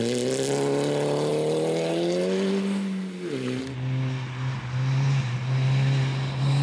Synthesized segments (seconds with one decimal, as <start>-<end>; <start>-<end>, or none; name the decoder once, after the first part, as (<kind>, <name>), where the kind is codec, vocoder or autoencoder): none